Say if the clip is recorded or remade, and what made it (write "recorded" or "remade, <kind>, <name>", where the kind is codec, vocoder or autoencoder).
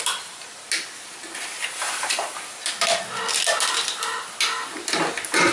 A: recorded